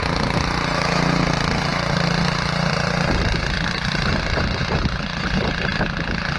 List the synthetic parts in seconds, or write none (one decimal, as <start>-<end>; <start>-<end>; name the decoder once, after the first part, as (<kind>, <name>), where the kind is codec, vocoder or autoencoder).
none